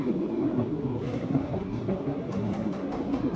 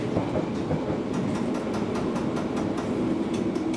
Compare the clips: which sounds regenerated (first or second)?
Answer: first